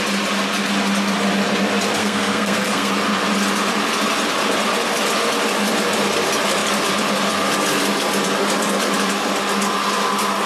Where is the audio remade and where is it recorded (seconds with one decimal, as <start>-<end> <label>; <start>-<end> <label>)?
0.0-2.0 recorded; 2.0-2.9 remade; 2.9-10.5 recorded